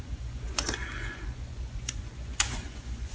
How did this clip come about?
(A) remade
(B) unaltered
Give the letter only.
A